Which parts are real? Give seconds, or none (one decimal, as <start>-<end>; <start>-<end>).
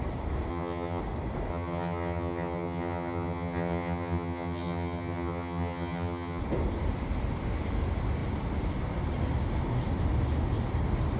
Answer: 0.0-0.5; 1.0-1.5; 6.4-11.2